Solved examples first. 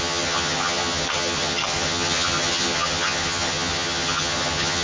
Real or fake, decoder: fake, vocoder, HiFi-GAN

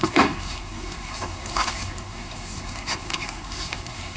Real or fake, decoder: fake, codec, SNAC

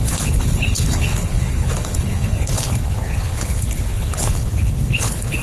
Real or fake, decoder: fake, codec, HILCodec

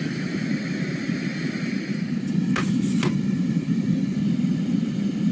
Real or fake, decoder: real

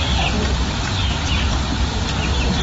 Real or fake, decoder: real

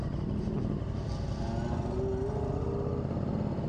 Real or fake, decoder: real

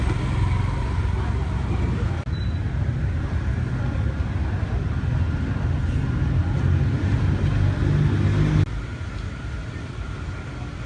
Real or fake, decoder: real